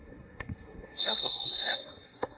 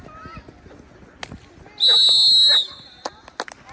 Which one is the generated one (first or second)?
first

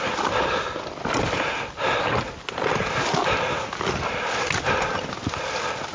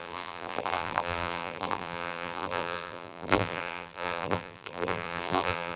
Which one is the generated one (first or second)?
second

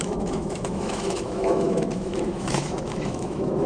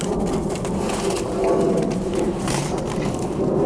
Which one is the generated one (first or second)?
first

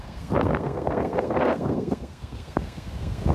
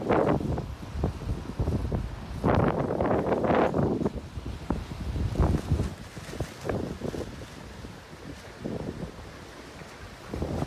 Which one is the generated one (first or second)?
first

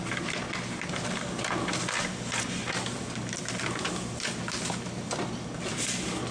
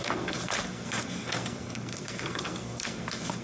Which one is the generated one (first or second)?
second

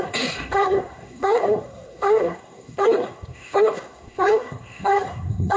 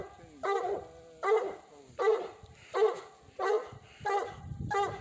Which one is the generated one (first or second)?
first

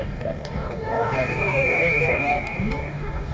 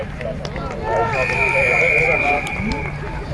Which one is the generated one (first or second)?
first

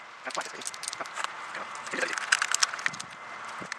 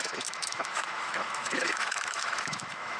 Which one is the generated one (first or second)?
second